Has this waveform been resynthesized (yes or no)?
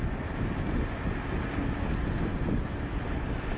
no